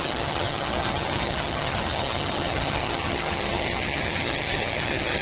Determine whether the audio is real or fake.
fake